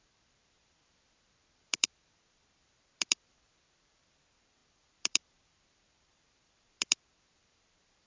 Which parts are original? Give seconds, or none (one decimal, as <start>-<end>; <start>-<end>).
none